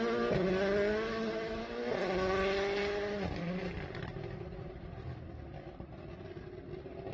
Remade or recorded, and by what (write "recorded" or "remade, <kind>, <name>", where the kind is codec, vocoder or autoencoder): recorded